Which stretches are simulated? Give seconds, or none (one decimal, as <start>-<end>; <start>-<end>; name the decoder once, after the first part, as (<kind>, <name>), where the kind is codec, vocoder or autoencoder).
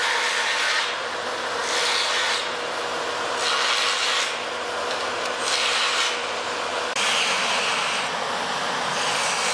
none